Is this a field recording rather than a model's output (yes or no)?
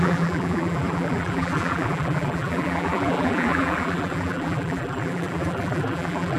no